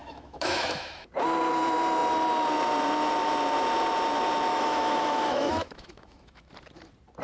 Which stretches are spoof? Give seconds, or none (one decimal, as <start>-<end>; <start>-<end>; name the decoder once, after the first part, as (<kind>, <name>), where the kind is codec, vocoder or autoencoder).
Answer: 0.0-1.1 (autoencoder, DAC-VAE); 4.5-6.5